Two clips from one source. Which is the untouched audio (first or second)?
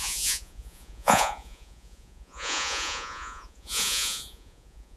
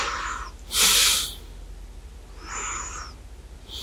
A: second